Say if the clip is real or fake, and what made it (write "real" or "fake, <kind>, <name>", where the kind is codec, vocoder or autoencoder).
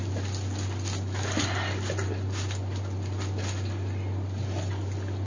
real